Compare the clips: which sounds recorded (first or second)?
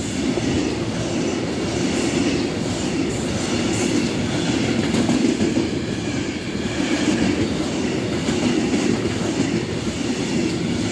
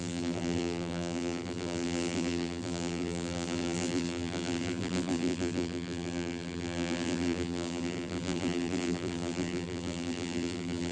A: first